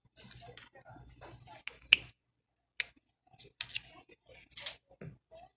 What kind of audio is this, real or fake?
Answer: real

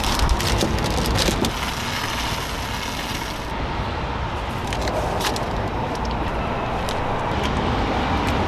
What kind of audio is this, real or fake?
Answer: real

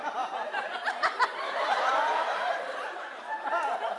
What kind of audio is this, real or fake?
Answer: fake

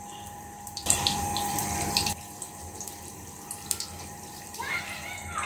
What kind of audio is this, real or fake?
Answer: fake